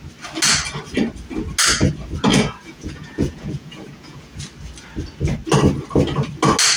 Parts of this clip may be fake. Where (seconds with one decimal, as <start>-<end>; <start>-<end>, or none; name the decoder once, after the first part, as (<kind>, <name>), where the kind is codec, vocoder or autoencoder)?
2.3-4.4 (vocoder, Vocos)